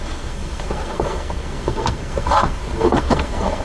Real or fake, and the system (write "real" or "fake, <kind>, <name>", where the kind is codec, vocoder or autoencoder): fake, codec, SNAC